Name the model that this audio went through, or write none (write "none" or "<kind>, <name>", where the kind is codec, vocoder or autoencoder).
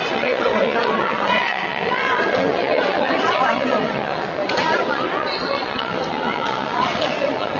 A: vocoder, WaveNeXt